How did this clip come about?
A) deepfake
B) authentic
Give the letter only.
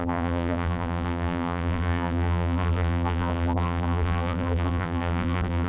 A